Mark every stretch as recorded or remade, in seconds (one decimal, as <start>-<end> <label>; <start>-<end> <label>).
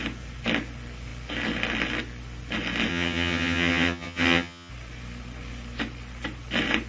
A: 0.0-2.9 recorded; 2.9-4.7 remade; 4.7-6.9 recorded